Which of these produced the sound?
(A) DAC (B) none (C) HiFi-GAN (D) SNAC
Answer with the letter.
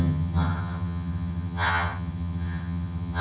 C